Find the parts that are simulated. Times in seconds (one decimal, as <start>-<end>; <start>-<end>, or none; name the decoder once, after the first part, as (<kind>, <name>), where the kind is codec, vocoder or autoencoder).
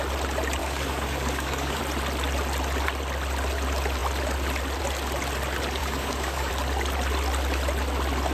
0.6-1.8 (codec, DAC); 5.8-6.5